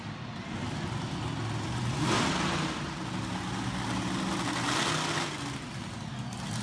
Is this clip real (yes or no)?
yes